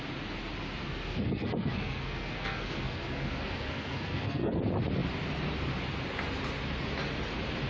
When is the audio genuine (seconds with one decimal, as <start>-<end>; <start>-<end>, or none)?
0.0-0.8; 4.6-7.7